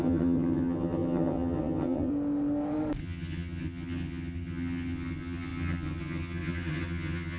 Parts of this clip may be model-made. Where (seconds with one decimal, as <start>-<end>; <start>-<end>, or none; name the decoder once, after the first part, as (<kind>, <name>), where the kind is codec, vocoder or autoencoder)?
0.0-2.1 (vocoder, HiFi-GAN); 3.0-7.4